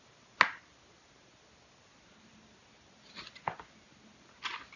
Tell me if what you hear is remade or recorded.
recorded